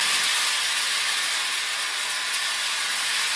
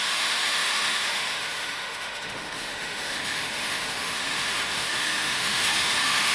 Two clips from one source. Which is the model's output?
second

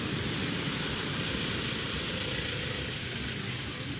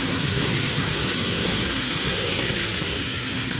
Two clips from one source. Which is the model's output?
second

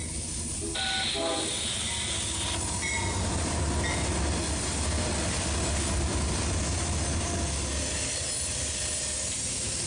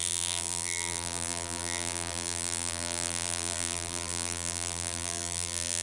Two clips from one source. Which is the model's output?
second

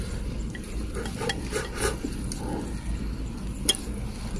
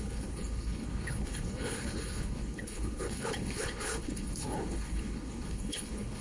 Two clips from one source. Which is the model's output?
second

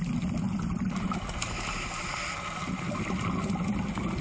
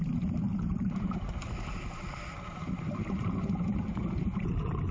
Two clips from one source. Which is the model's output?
second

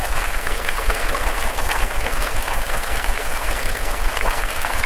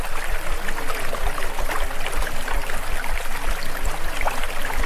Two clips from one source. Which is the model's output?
first